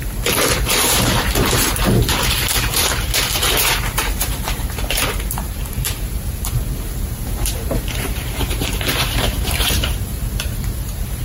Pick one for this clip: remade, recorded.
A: remade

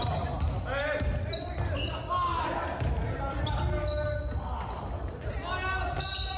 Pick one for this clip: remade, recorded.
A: recorded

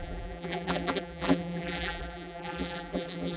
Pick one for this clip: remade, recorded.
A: remade